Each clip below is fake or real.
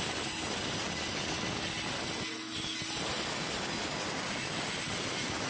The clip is real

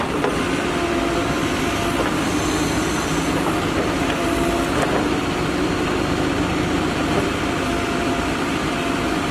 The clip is real